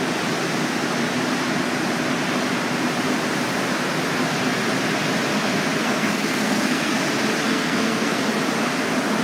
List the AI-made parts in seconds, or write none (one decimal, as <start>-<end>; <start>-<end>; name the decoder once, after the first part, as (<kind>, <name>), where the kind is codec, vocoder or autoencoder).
5.8-6.9 (codec, SNAC); 7.5-8.2